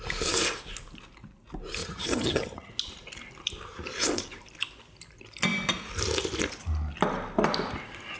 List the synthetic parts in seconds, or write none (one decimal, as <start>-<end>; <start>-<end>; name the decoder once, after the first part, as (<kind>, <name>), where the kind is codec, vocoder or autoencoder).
1.8-2.7 (vocoder, HiFi-GAN)